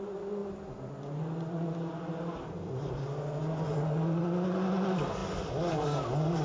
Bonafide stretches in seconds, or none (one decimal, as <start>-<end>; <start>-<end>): 0.0-6.4